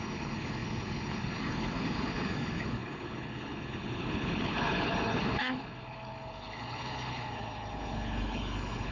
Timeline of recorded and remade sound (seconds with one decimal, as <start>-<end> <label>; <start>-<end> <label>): 0.0-8.9 remade